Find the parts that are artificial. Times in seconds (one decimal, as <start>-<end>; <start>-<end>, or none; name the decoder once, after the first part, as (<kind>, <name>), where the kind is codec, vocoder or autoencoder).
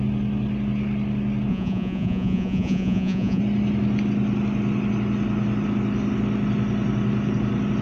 1.5-3.4 (vocoder, Vocos)